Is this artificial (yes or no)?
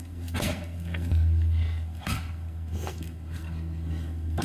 yes